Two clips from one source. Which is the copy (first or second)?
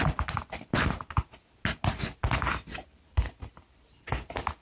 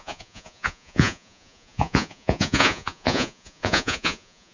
second